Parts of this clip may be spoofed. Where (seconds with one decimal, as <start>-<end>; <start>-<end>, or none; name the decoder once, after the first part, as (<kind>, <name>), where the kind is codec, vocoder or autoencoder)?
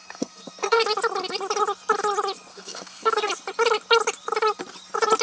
0.0-0.8 (codec, SNAC); 2.5-3.3